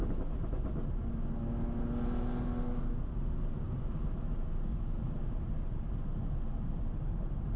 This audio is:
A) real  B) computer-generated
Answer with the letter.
A